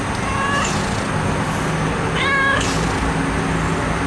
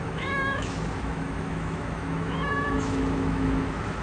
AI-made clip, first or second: second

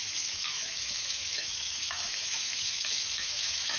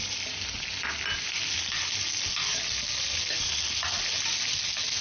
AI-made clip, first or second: first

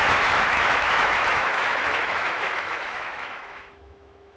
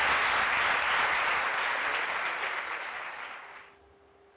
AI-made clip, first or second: first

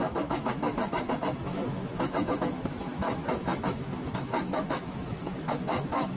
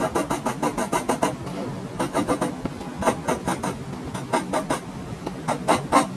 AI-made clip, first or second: first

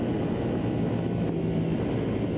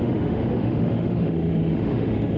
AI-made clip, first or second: second